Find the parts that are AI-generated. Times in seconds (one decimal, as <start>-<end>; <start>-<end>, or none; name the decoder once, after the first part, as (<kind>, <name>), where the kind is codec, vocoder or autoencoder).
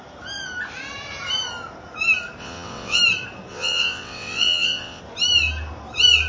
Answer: 2.4-3.0 (vocoder, WaveNeXt); 3.5-5.0